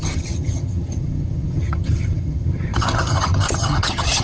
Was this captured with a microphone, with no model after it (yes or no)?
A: no